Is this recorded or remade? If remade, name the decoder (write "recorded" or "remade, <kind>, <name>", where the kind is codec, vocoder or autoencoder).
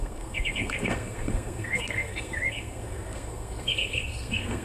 remade, codec, SNAC